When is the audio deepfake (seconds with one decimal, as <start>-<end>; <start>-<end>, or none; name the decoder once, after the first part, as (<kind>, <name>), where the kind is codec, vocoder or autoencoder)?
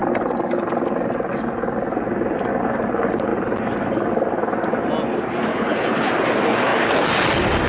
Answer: 5.5-6.1 (codec, HILCodec)